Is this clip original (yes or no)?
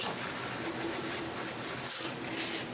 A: yes